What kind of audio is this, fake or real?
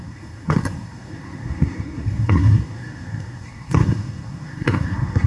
fake